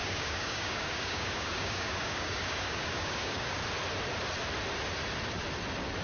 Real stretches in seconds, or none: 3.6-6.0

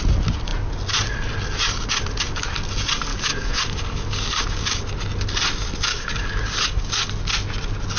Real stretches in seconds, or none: 0.0-3.1; 4.8-5.9; 7.1-8.0

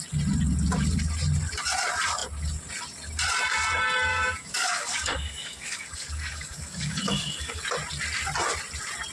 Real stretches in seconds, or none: 0.0-4.1; 7.6-9.1

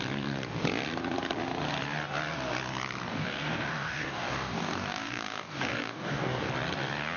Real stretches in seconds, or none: 0.0-3.1; 6.5-7.2

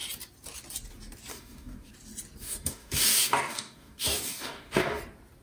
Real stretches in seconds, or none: 0.0-1.3; 1.9-2.4; 5.0-5.4

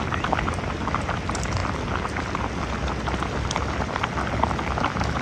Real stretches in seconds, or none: 0.0-5.2

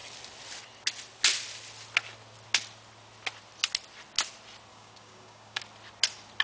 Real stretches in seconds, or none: 0.0-4.7; 5.6-6.4